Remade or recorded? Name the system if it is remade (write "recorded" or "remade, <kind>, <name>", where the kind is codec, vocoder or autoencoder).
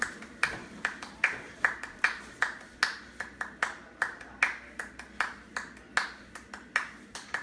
recorded